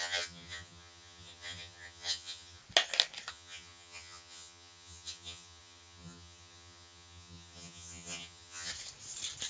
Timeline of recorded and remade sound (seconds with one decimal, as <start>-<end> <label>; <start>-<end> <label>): 0.0-2.6 remade; 2.6-3.3 recorded; 3.3-8.7 remade; 8.7-9.5 recorded